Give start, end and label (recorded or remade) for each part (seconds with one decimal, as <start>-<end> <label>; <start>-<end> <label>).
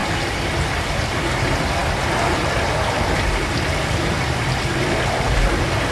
0.0-5.9 recorded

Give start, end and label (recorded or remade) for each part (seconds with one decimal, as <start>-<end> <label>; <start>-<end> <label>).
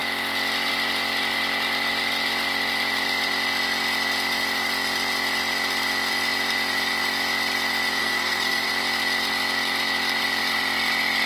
0.0-8.0 recorded; 8.0-8.7 remade; 8.7-11.3 recorded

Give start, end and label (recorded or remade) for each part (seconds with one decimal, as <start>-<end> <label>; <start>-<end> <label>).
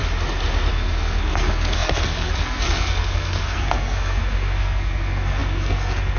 0.0-0.7 recorded; 0.7-6.2 remade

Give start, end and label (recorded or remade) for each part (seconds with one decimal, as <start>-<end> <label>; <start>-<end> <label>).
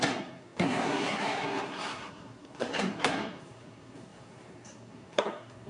0.0-5.7 remade